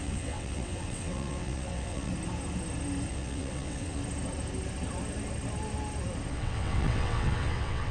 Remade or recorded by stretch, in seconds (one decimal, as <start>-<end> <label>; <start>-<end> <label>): 0.0-2.1 remade; 2.1-3.1 recorded; 3.1-4.0 remade; 4.0-6.3 recorded; 6.3-7.9 remade